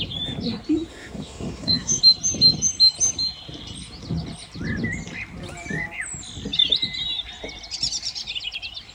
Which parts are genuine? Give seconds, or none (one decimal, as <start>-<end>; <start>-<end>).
0.0-0.9; 2.0-8.9